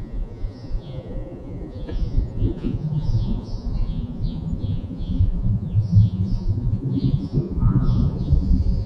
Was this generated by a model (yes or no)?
yes